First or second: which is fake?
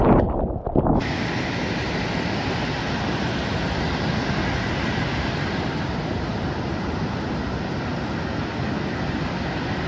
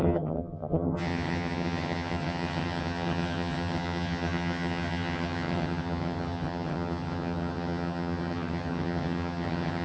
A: second